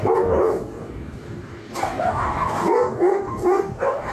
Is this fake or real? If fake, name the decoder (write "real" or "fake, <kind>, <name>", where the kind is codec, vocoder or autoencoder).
fake, codec, DAC